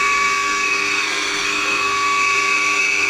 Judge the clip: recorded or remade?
remade